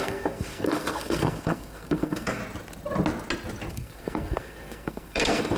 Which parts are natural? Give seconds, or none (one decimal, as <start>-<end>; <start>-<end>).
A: 2.4-3.7